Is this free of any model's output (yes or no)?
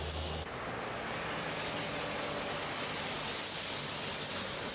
yes